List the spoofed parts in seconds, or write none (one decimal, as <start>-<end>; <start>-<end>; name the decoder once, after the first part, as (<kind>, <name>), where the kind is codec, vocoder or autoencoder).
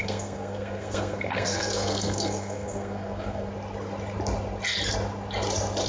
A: 0.0-3.5 (codec, SNAC)